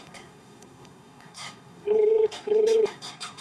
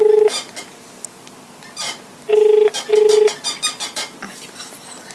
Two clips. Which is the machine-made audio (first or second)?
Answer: first